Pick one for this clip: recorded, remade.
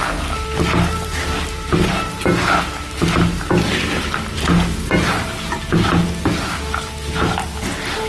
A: recorded